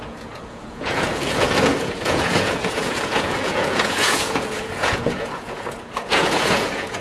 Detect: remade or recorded remade